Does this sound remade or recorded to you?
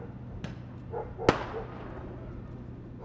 recorded